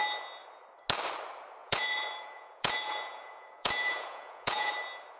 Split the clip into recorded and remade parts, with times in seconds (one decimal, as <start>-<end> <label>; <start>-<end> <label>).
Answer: 0.0-1.6 recorded; 1.6-4.7 remade; 4.7-5.2 recorded